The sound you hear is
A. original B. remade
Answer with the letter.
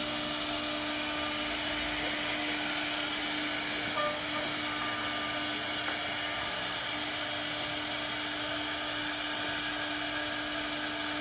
A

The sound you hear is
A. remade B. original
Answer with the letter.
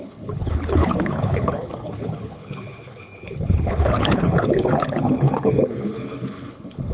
A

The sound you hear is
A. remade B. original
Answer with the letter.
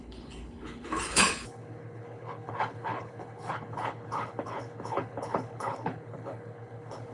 A